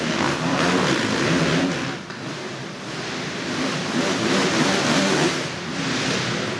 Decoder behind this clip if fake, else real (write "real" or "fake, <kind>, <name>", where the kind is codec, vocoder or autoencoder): real